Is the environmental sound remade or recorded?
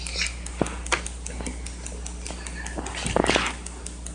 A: recorded